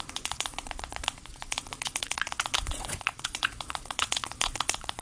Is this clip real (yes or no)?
no